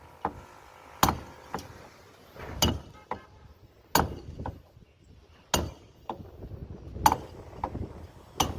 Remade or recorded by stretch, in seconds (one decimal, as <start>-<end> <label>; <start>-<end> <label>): 0.0-8.6 recorded

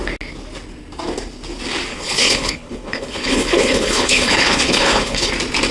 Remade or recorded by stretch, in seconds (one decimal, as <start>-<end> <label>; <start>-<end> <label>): 0.0-1.9 recorded; 1.9-5.3 remade; 5.3-5.7 recorded